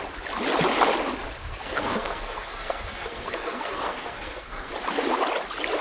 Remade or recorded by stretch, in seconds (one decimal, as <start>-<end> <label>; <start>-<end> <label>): 0.0-1.4 recorded; 1.4-4.7 remade; 4.7-5.8 recorded